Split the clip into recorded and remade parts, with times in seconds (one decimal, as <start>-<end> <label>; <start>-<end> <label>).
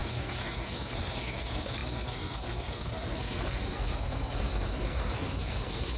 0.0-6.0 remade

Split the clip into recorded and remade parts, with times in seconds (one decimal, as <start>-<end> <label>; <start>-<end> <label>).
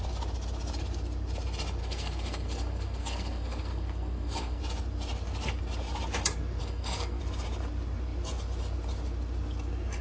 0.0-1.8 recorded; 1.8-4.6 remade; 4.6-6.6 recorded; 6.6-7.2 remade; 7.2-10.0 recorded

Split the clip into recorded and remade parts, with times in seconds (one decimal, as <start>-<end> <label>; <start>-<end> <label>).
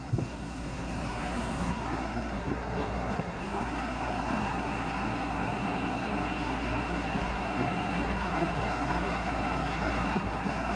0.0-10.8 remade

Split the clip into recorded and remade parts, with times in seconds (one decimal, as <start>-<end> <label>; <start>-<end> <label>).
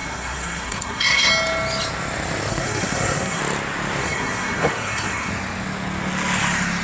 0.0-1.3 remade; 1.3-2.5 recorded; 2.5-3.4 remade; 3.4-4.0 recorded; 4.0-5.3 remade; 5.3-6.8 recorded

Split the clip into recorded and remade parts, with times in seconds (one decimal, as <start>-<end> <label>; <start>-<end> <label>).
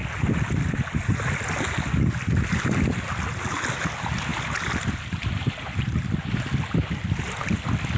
0.0-8.0 recorded